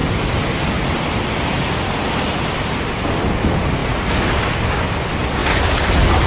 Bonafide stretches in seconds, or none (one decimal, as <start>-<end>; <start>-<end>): 0.0-6.3